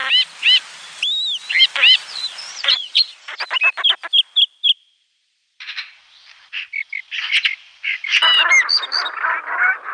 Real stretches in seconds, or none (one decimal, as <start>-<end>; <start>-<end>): 0.0-2.5; 3.4-9.9